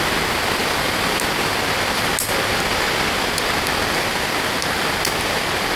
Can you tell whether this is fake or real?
real